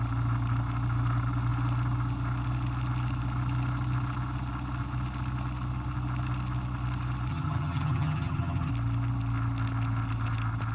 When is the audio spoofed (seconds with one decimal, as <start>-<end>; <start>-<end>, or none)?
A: 7.3-8.7